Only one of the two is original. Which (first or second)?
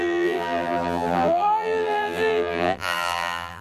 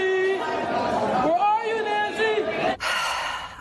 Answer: second